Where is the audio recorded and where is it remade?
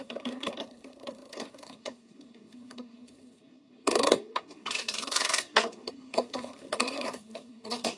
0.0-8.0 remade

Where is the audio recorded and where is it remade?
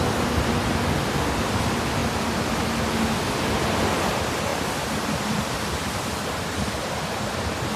0.0-4.5 recorded; 4.5-6.1 remade; 6.1-7.8 recorded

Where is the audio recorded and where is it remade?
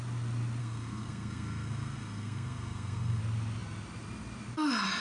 0.0-0.6 recorded; 0.6-3.2 remade; 3.2-5.0 recorded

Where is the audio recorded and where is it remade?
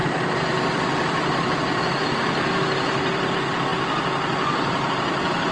0.0-3.3 remade; 3.3-5.5 recorded